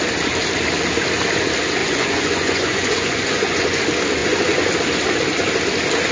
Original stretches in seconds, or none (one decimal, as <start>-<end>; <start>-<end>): 0.0-1.8; 3.8-4.2; 4.7-6.1